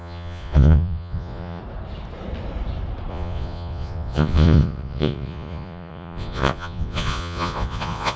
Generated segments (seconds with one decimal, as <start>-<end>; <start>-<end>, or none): 0.0-1.6; 3.1-8.2